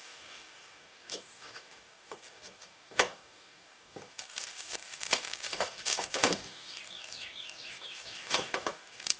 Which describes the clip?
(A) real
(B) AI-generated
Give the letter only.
B